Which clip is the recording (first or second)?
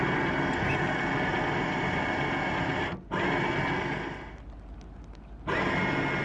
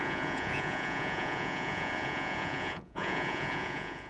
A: first